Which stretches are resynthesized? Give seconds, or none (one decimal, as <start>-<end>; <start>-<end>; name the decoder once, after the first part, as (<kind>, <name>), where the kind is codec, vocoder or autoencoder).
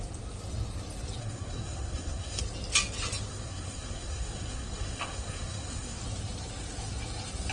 1.2-2.4 (codec, SNAC); 3.3-6.0